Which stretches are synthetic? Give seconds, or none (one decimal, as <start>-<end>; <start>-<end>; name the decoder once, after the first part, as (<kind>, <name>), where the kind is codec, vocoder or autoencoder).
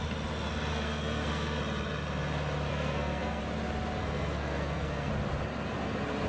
0.7-1.6 (codec, SNAC); 2.7-3.4; 4.0-5.1